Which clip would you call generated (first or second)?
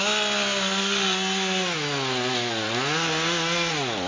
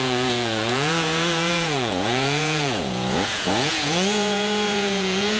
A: second